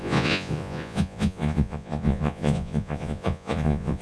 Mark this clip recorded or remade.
remade